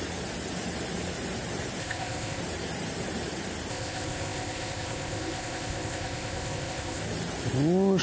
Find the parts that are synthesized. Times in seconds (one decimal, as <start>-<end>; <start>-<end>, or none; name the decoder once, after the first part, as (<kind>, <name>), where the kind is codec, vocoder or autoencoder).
1.8-2.4 (codec, ZipCodec); 3.7-7.0